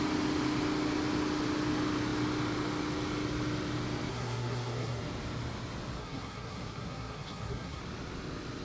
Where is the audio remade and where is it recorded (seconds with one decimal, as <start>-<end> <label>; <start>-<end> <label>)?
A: 0.0-4.1 recorded; 4.1-5.0 remade; 5.0-6.0 recorded; 6.0-7.8 remade; 7.8-8.6 recorded